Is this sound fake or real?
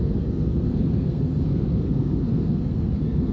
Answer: fake